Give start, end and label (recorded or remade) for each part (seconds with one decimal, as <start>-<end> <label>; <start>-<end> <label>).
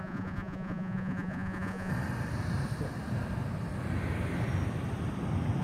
0.0-1.9 remade; 1.9-5.6 recorded